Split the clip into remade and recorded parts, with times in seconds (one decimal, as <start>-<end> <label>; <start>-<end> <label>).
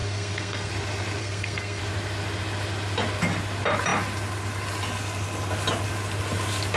0.0-0.7 remade; 0.7-1.2 recorded; 1.2-1.8 remade; 1.8-6.8 recorded